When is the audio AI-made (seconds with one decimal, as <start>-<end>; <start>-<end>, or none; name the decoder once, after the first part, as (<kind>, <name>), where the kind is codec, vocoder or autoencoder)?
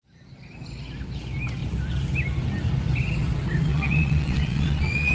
3.7-5.1 (vocoder, WaveNeXt)